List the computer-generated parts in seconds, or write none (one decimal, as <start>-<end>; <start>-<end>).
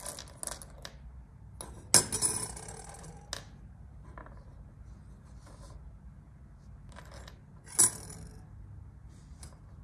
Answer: none